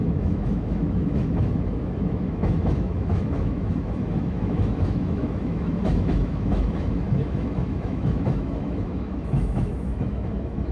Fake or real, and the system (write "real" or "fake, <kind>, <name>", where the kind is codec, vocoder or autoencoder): fake, autoencoder, DAC-VAE